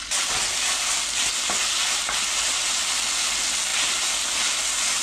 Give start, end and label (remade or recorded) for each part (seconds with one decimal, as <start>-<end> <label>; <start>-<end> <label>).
0.0-5.0 recorded